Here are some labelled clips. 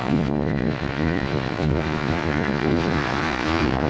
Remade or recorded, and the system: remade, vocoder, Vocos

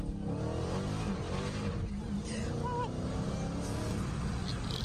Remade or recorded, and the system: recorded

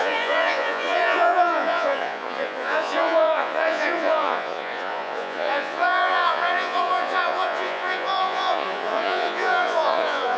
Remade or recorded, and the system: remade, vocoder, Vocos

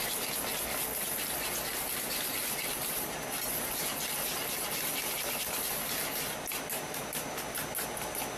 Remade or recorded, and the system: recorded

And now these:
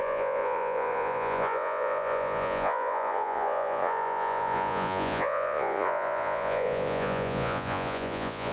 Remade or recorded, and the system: remade, vocoder, Vocos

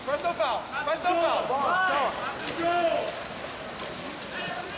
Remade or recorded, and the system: recorded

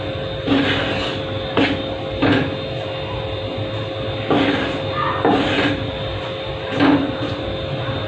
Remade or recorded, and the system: recorded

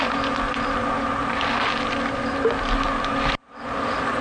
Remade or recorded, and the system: recorded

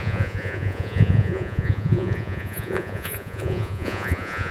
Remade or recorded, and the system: remade, vocoder, Vocos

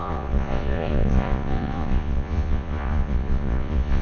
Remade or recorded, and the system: remade, vocoder, Vocos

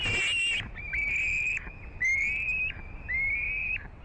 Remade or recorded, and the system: recorded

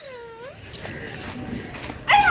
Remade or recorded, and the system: recorded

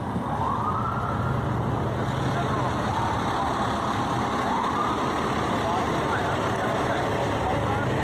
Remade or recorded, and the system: recorded